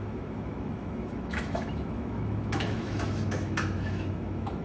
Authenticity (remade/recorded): remade